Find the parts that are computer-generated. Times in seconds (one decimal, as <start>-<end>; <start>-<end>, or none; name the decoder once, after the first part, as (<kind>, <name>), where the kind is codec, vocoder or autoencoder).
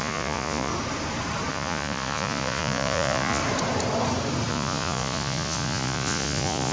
0.0-0.7 (vocoder, Vocos); 1.5-3.4; 4.5-6.7